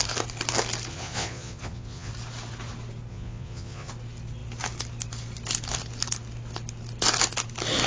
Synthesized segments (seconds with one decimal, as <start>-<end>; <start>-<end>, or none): 0.9-2.1; 3.1-3.9